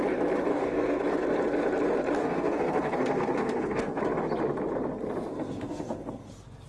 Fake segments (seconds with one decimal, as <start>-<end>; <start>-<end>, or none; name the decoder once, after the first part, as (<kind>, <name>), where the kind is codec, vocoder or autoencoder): 0.5-1.0 (codec, SNAC); 2.2-4.0; 5.3-6.3